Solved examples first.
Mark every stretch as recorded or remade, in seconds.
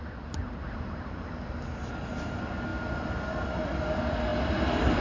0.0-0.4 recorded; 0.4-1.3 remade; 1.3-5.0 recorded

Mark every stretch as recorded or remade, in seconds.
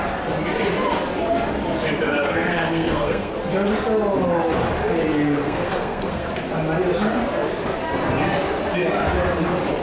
0.0-2.1 recorded; 2.1-3.3 remade; 3.3-5.4 recorded; 5.4-6.3 remade; 6.3-9.8 recorded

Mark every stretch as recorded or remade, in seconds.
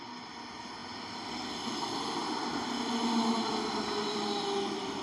0.0-5.0 recorded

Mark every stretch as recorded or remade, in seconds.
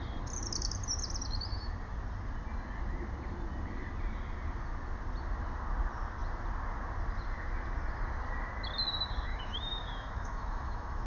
0.0-9.3 recorded; 9.3-11.1 remade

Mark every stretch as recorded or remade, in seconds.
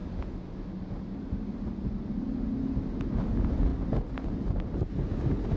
0.0-5.6 recorded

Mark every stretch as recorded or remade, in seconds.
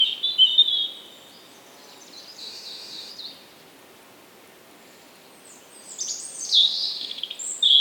0.0-2.4 recorded; 2.4-3.1 remade; 3.1-6.6 recorded; 6.6-7.2 remade; 7.2-7.8 recorded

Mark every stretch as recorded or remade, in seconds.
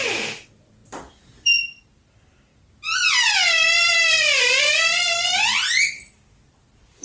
0.0-7.0 recorded